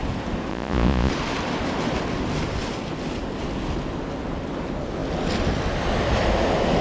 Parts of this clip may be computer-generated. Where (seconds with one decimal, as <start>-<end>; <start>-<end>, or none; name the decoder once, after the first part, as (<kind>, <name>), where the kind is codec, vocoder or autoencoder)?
0.5-1.1 (vocoder, Vocos)